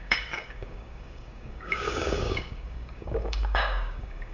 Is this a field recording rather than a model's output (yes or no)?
no